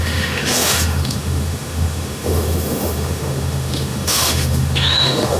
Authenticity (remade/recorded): remade